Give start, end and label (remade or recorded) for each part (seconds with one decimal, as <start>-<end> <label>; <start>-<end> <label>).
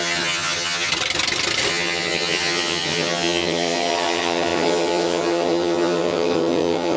0.0-0.9 remade; 0.9-1.7 recorded; 1.7-7.0 remade